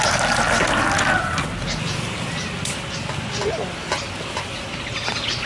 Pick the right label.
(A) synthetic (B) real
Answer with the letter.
B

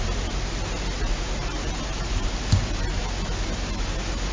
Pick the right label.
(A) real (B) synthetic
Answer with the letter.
A